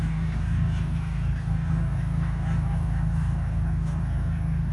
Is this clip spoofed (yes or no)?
yes